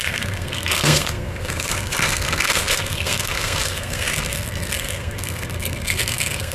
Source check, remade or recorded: remade